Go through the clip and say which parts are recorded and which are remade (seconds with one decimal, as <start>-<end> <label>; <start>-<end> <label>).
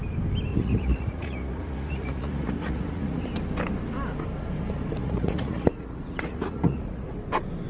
0.0-0.5 recorded; 0.5-3.2 remade; 3.2-5.0 recorded; 5.0-7.2 remade; 7.2-7.7 recorded